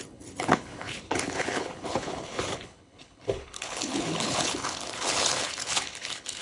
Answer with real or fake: fake